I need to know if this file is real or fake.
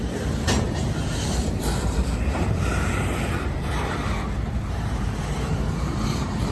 fake